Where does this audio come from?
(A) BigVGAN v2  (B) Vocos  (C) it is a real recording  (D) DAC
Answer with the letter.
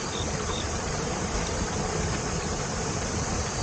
A